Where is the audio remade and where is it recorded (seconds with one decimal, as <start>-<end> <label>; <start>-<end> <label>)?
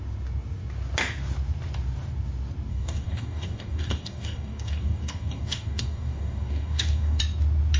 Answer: 0.0-2.7 recorded; 2.7-7.2 remade; 7.2-7.8 recorded